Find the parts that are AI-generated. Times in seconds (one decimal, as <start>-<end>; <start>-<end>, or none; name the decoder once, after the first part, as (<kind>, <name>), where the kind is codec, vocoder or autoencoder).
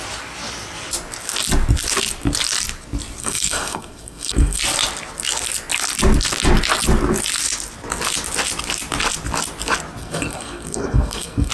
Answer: 3.2-4.6 (codec, SNAC); 10.0-11.5